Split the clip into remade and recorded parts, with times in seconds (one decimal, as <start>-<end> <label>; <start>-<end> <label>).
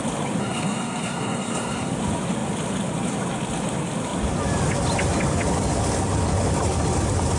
0.0-0.4 recorded; 0.4-1.9 remade; 1.9-7.4 recorded